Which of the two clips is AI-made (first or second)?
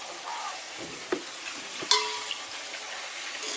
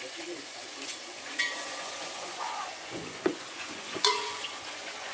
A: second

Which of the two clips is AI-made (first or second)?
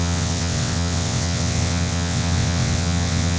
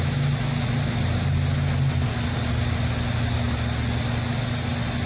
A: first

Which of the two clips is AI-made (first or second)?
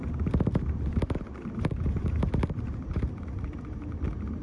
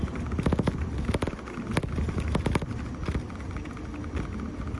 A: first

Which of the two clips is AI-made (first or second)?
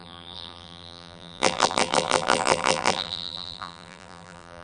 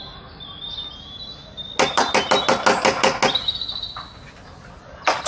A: first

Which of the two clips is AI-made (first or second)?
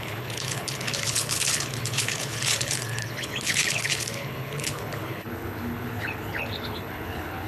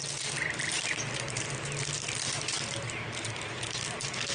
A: first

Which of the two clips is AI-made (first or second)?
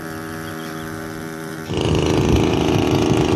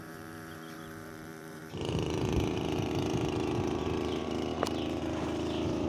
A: second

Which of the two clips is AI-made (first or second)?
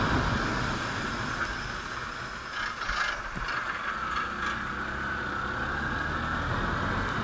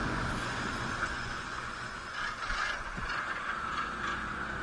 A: second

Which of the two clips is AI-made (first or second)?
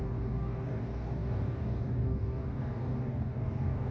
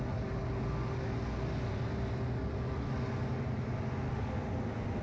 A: first